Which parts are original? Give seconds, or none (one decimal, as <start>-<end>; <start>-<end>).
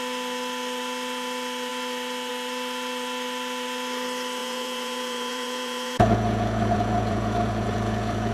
0.0-4.4